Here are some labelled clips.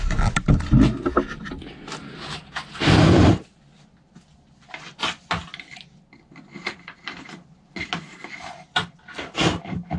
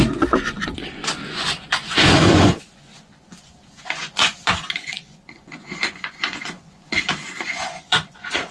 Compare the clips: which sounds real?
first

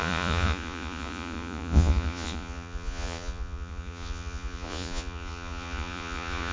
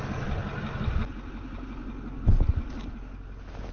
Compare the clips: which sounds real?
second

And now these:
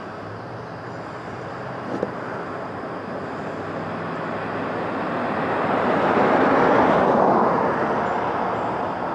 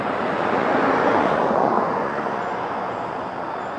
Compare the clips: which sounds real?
first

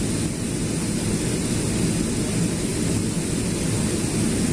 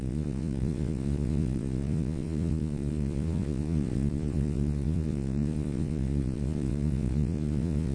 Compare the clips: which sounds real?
first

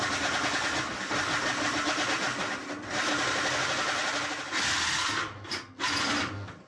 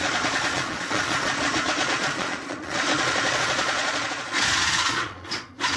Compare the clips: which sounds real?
first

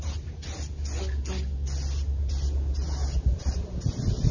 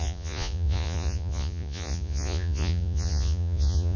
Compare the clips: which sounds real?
first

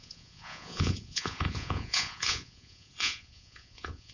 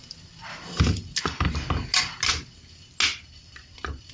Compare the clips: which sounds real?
second